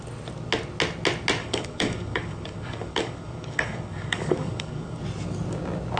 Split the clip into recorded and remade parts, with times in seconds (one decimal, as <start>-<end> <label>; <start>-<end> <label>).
0.0-1.4 recorded; 1.4-5.0 remade; 5.0-6.0 recorded